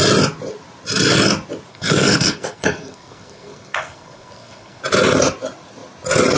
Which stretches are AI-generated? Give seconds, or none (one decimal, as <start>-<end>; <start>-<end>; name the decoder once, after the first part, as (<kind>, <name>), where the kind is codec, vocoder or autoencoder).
1.7-4.8 (codec, SNAC)